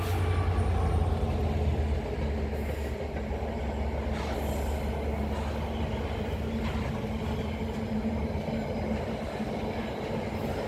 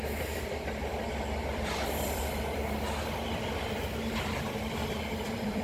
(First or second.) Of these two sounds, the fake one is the second